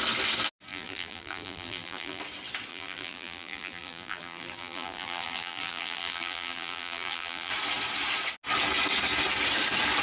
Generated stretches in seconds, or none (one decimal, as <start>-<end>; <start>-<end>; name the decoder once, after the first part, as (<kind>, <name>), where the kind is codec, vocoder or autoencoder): 0.7-2.2 (vocoder, BigVGAN v2); 2.7-7.5